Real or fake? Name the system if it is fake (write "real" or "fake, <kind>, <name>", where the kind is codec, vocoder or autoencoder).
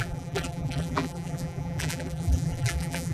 fake, vocoder, BigVGAN v2